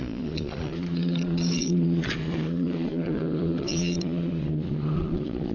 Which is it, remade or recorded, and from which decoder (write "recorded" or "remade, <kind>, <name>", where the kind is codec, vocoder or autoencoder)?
remade, vocoder, Vocos